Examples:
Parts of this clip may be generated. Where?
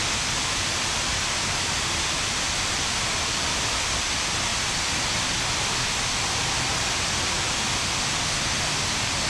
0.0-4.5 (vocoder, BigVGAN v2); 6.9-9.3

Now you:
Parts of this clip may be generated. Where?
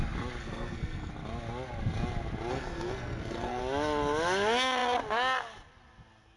0.4-1.1 (codec, SNAC); 2.5-3.6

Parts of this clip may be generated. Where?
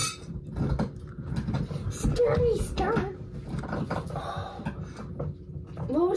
none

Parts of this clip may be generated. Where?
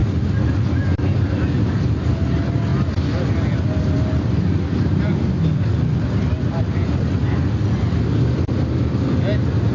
none